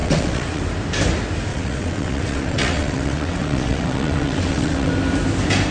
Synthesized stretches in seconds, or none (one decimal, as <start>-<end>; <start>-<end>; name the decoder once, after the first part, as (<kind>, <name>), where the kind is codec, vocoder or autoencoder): 0.0-0.6 (vocoder, WaveNeXt); 1.5-4.9